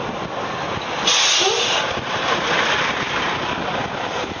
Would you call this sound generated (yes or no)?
no